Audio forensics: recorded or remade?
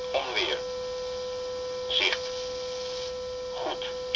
recorded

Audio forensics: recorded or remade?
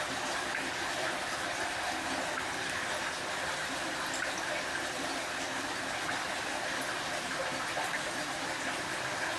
recorded